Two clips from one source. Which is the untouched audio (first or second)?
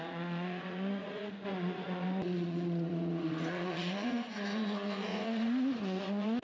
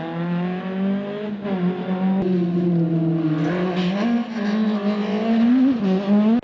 second